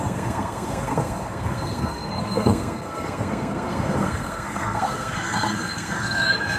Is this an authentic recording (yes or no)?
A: no